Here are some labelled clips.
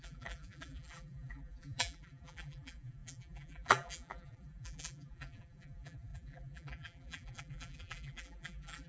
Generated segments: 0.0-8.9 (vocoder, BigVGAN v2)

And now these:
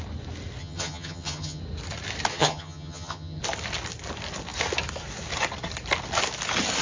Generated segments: 0.6-1.6 (vocoder, HiFi-GAN); 2.3-3.4